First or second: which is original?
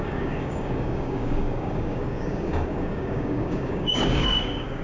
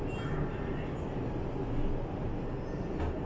second